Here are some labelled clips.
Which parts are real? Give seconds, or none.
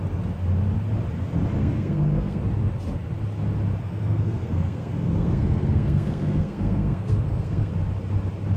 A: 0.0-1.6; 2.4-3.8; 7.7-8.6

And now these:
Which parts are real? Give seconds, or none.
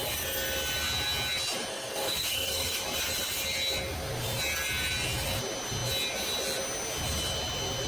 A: 0.0-1.7; 2.8-7.9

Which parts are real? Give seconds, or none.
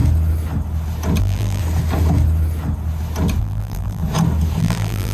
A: 0.0-1.2; 1.6-3.4; 4.0-4.6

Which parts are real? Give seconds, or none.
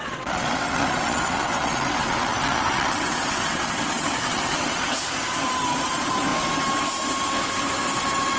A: 5.0-8.4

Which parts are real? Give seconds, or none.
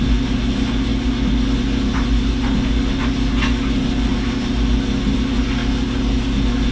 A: 0.0-6.7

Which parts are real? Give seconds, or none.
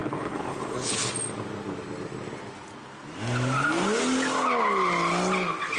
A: 1.1-5.8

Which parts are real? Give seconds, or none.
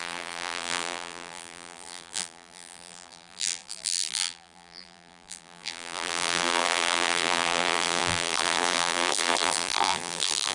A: none